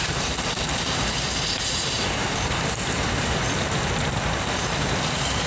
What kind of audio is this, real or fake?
fake